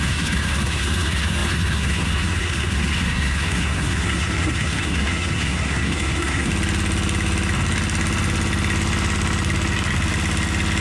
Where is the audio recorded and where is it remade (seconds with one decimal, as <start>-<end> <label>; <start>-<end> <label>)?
0.0-6.5 remade; 6.5-10.8 recorded